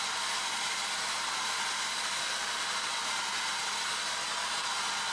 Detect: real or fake real